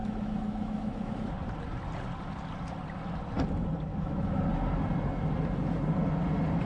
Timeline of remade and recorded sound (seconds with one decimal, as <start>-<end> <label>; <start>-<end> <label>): 0.0-1.1 remade; 1.1-3.9 recorded; 3.9-4.4 remade; 4.4-6.7 recorded